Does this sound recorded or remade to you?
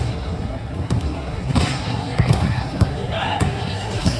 remade